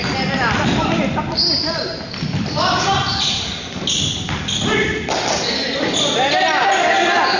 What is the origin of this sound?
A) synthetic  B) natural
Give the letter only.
B